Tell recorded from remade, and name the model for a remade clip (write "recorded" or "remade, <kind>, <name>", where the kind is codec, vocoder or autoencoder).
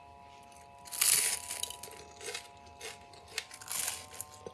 recorded